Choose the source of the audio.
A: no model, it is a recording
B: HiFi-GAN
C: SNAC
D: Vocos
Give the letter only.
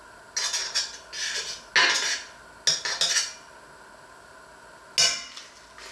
A